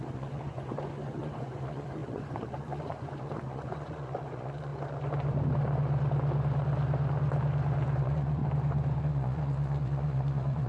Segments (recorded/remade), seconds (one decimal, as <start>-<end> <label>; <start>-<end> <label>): 0.0-4.7 remade; 4.7-8.0 recorded; 8.0-8.4 remade; 8.4-9.0 recorded; 9.0-10.7 remade